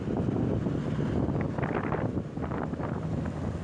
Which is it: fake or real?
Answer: real